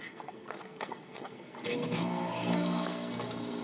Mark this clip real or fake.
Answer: fake